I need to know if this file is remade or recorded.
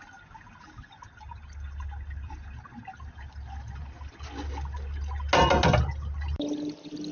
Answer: recorded